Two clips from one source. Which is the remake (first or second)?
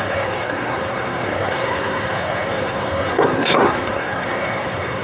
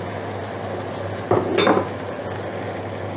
first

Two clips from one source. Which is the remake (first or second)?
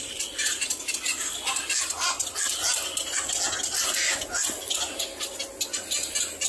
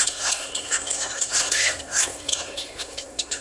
second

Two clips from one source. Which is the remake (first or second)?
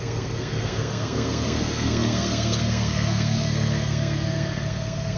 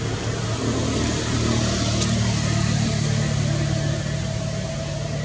first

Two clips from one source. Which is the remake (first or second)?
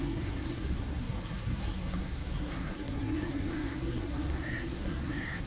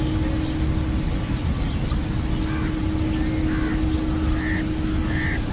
first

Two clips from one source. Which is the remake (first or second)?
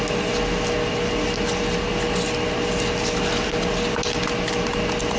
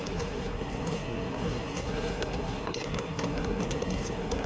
second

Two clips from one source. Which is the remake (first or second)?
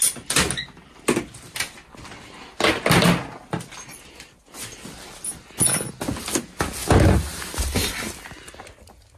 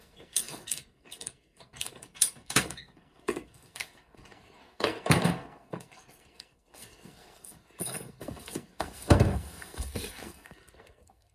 second